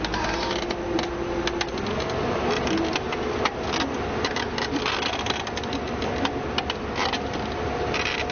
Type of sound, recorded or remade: recorded